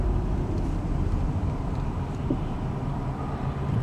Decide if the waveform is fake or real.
fake